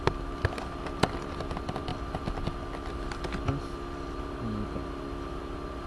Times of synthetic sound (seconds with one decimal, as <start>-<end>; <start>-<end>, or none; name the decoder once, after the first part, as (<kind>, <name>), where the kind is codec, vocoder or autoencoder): none